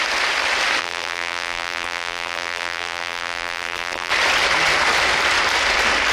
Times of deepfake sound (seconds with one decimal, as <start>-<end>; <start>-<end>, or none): 0.8-4.1